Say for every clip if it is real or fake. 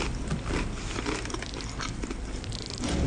fake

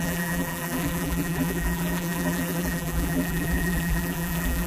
fake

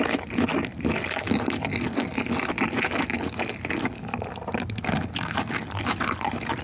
real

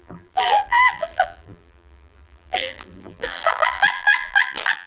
fake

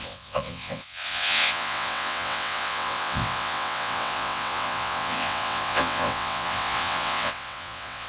fake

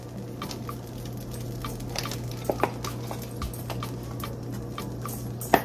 real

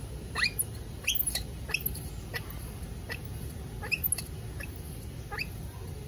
real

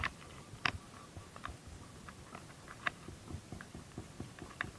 real